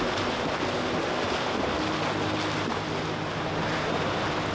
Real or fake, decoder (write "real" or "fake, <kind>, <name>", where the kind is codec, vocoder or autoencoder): real